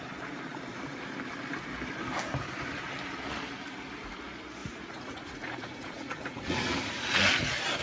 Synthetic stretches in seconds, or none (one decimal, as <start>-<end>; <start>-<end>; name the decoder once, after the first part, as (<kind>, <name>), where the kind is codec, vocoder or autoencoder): 4.6-7.3 (vocoder, Vocos)